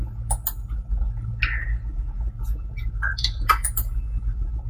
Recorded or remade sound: recorded